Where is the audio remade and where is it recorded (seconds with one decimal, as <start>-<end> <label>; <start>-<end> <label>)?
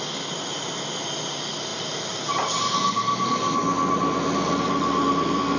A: 0.0-1.7 recorded; 1.7-2.6 remade; 2.6-5.6 recorded